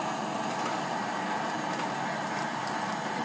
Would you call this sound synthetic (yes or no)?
no